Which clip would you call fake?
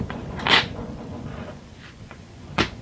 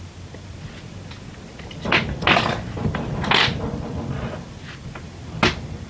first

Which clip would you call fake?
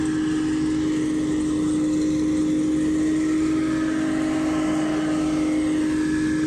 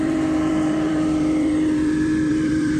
second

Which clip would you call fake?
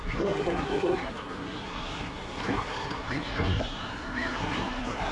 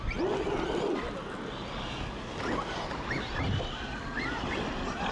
first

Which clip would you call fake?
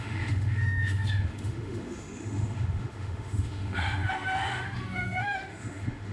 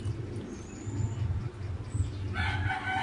first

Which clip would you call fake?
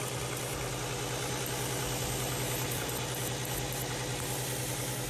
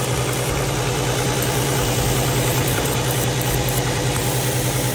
second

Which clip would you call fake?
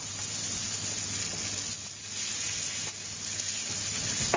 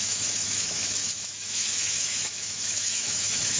second